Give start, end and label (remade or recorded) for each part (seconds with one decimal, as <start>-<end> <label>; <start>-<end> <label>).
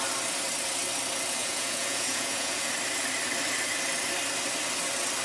0.0-1.4 recorded; 1.4-2.7 remade; 2.7-5.2 recorded